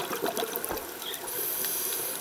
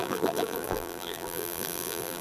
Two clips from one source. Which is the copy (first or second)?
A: second